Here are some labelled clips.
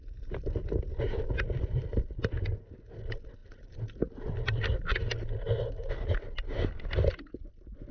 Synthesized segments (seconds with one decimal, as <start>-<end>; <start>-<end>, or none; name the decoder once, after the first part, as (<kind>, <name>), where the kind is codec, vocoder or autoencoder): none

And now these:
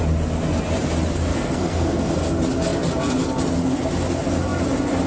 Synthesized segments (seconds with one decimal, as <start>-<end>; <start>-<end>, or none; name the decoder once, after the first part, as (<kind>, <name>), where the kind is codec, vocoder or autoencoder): 1.3-2.1 (codec, SNAC)

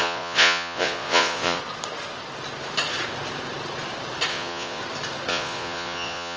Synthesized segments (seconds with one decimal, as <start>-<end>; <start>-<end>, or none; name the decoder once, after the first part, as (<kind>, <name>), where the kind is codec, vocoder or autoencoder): 0.0-1.6 (vocoder, Vocos); 4.3-4.8; 5.3-6.4

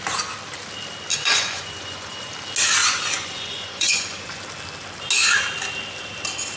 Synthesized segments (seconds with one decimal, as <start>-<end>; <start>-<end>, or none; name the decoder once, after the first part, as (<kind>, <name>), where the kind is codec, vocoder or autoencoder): 1.1-2.3 (vocoder, Vocos); 2.8-4.4